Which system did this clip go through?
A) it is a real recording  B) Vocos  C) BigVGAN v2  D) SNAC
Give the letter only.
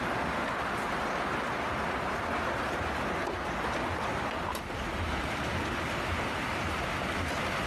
A